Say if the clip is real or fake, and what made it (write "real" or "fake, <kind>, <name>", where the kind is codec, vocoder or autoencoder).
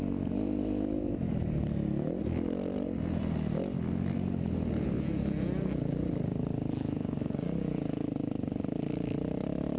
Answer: real